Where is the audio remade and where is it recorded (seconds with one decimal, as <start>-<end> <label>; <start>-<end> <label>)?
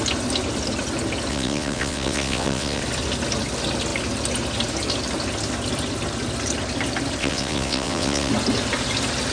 0.0-1.3 recorded; 1.3-2.8 remade; 2.8-7.2 recorded; 7.2-8.3 remade; 8.3-9.3 recorded